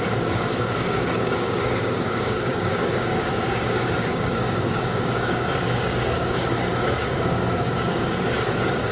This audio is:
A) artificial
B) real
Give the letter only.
A